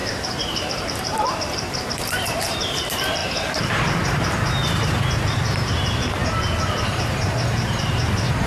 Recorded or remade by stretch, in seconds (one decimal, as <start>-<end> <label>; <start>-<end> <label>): 0.0-6.2 remade; 6.2-7.1 recorded; 7.1-8.5 remade